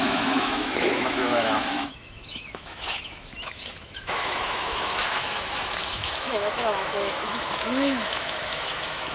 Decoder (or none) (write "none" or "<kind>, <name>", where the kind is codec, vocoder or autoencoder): autoencoder, DAC-VAE